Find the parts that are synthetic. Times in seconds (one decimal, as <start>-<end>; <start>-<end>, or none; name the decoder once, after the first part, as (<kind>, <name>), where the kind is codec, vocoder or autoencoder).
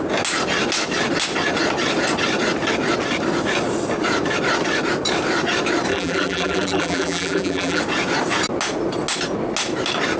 5.9-7.8 (vocoder, BigVGAN v2)